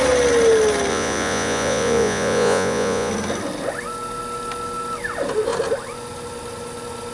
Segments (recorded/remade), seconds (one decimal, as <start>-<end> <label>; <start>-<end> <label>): 0.0-0.9 recorded; 0.9-3.1 remade; 3.1-7.1 recorded